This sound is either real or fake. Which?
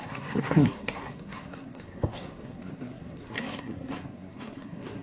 fake